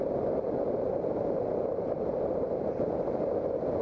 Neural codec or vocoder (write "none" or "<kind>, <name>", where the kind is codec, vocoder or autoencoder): none